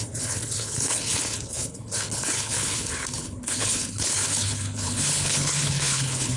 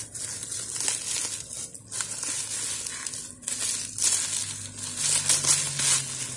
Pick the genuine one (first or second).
second